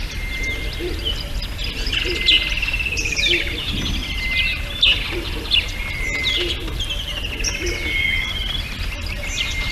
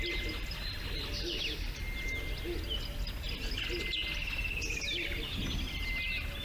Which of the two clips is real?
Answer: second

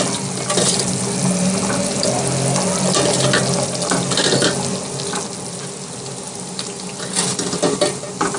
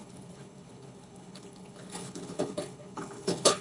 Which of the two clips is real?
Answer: first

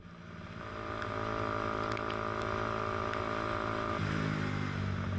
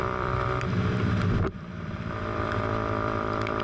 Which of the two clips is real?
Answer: first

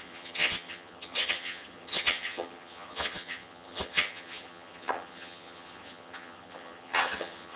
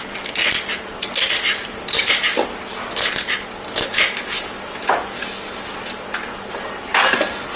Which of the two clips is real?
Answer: second